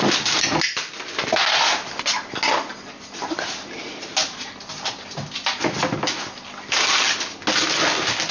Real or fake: real